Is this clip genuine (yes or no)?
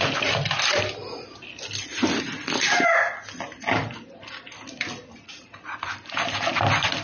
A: yes